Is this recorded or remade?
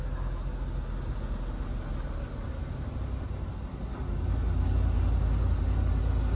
recorded